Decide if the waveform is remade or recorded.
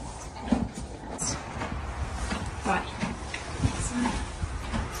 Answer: recorded